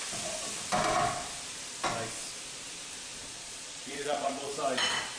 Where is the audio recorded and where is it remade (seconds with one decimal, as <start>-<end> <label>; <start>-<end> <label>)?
0.0-3.2 recorded; 3.2-4.5 remade; 4.5-5.2 recorded